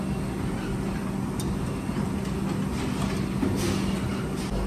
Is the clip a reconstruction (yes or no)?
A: no